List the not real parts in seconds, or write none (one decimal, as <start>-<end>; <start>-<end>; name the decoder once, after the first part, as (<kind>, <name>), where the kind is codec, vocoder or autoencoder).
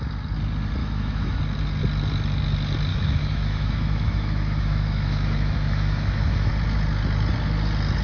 0.8-1.4 (autoencoder, DAC-VAE); 2.9-6.5